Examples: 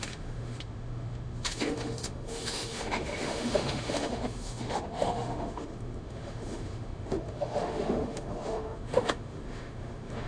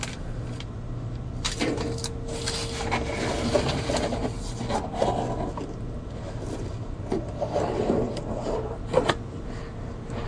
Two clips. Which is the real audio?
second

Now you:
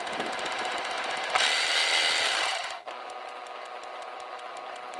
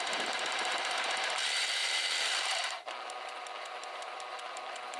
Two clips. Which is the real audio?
first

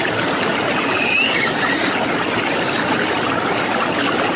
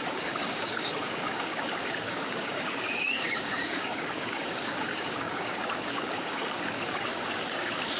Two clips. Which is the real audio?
first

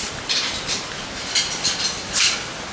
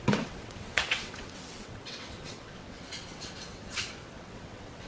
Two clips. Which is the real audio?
first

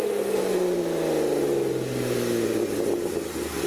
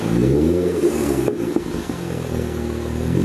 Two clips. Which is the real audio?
first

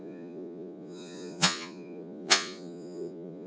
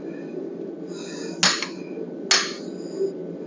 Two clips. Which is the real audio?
second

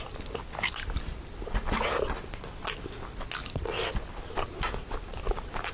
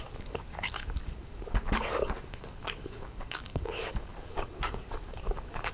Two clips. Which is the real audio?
first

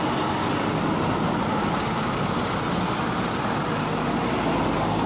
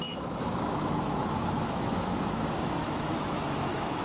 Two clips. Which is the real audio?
first